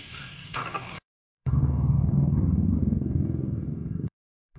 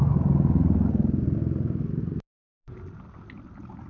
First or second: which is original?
second